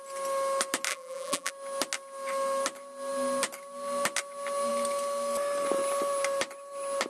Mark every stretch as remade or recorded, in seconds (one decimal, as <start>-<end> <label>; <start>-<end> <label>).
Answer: 0.0-0.9 recorded; 0.9-1.5 remade; 1.5-7.1 recorded